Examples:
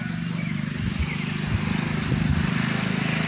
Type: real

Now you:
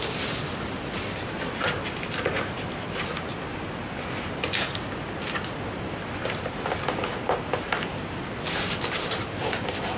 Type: real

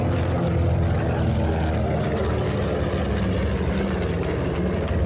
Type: real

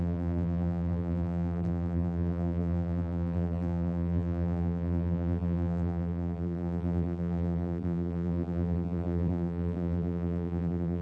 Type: fake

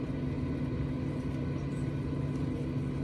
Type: real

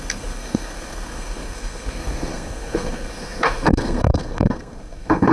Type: fake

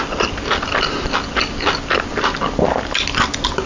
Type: real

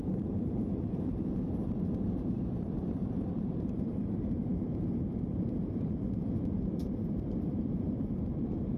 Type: fake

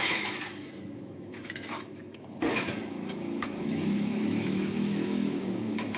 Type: fake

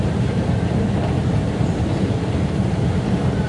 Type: fake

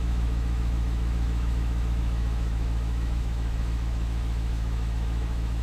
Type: fake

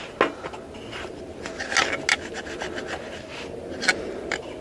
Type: real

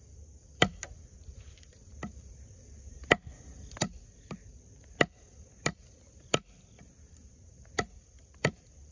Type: fake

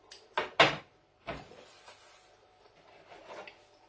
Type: real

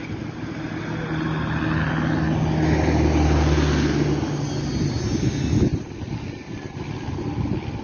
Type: real